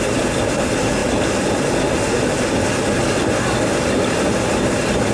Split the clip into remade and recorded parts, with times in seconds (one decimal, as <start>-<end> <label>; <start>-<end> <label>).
0.0-5.1 recorded